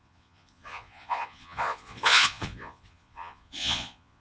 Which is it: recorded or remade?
remade